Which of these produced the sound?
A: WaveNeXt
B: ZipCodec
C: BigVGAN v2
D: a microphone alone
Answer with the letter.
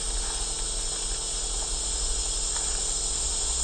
D